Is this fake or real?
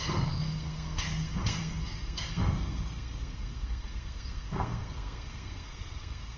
fake